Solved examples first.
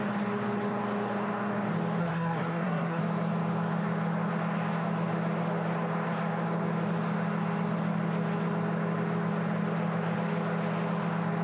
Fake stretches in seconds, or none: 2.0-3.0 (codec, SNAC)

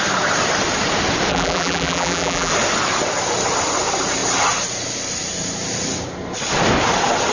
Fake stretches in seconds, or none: 1.3-2.5 (vocoder, BigVGAN v2)

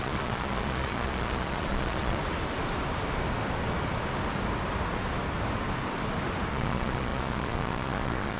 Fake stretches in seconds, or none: 0.0-2.2 (vocoder, Vocos); 6.5-8.4